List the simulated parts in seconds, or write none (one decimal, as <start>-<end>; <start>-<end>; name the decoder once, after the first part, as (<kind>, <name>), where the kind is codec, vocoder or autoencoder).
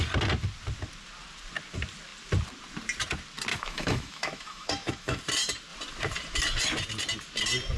3.5-5.2 (autoencoder, DAC-VAE)